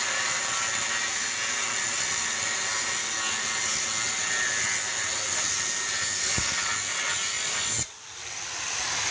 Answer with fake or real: real